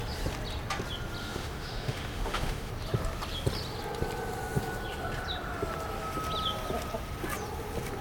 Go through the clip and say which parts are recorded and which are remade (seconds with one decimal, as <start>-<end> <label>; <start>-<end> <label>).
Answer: 0.0-1.2 recorded; 1.2-2.7 remade; 2.7-8.0 recorded